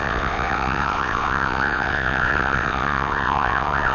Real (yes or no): no